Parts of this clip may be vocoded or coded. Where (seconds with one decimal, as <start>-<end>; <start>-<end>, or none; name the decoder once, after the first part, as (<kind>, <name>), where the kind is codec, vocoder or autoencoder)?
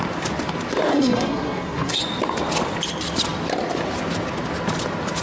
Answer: 0.9-2.0 (codec, SNAC)